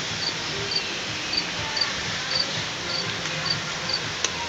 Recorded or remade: recorded